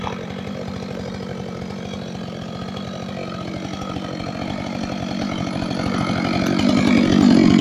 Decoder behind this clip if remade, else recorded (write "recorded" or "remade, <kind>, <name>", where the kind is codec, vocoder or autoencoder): recorded